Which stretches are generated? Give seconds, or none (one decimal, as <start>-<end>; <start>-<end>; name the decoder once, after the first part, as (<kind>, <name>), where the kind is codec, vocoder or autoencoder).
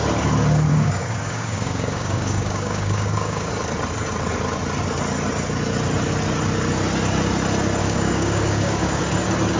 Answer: 0.7-3.5 (codec, DAC); 7.8-9.0